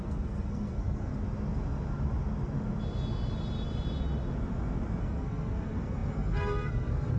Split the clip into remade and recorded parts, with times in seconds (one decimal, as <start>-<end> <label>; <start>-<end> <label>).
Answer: 0.0-1.1 remade; 1.1-5.0 recorded; 5.0-7.2 remade